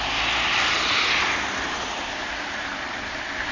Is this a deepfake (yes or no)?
no